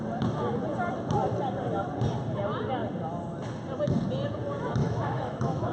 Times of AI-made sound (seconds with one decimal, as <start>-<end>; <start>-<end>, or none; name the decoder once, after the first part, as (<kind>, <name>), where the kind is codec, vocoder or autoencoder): 4.8-5.7 (autoencoder, DAC-VAE)